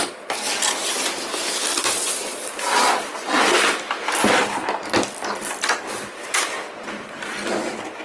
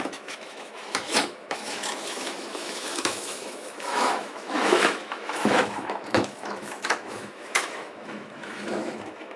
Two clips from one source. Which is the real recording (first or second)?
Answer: first